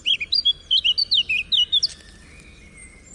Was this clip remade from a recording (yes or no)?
no